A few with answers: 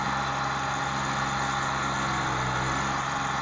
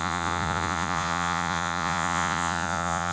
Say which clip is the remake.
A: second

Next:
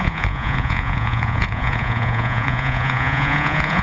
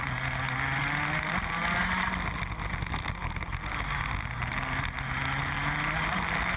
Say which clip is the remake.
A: first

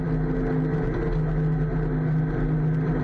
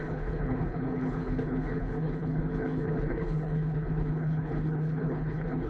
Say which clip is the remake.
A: second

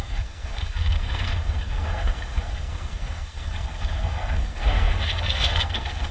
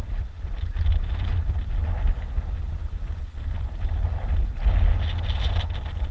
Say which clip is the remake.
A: first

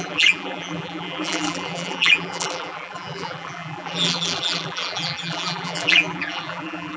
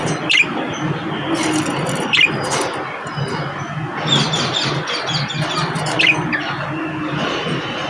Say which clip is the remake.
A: first